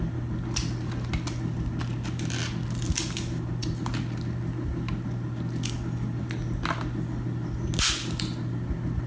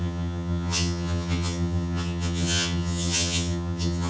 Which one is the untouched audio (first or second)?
first